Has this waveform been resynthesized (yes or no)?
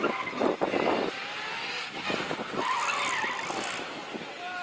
no